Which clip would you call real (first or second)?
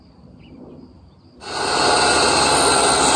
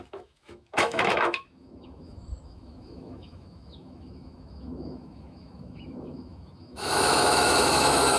first